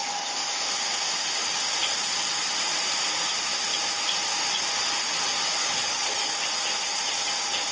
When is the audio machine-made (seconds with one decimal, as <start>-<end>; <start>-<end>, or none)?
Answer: 0.0-0.6; 5.6-6.4